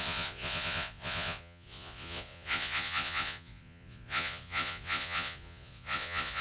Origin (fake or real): fake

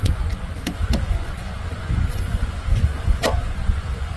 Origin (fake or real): fake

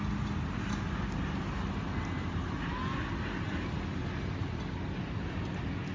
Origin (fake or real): real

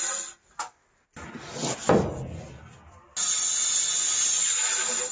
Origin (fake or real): real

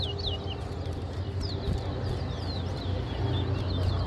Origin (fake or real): real